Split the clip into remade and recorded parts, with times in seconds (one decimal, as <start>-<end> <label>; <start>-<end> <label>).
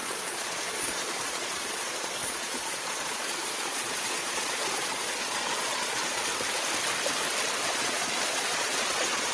0.0-6.3 remade; 6.3-7.6 recorded; 7.6-9.3 remade